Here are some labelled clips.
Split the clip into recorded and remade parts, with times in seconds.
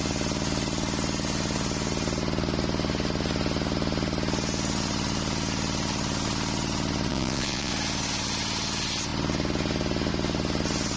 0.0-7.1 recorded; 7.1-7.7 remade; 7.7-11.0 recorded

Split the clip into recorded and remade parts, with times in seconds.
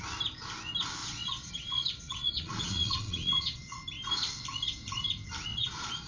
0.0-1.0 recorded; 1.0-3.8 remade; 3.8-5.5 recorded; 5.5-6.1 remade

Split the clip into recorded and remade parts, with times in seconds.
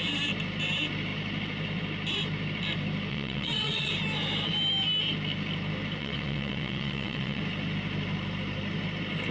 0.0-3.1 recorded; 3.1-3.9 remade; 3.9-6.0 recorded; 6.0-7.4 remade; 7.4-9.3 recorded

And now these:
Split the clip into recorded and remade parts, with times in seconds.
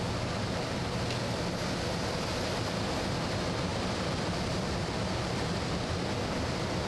0.0-6.9 recorded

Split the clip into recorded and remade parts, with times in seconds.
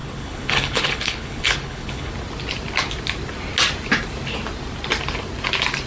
0.0-2.1 remade; 2.1-5.9 recorded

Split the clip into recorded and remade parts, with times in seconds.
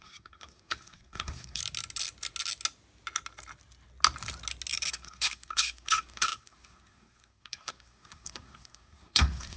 0.0-1.6 remade; 1.6-4.9 recorded; 4.9-9.6 remade